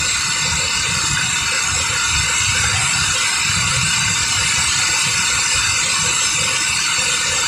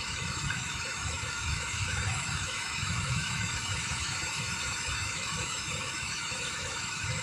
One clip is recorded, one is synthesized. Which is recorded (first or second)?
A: first